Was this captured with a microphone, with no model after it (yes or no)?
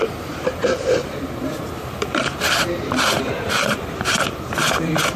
no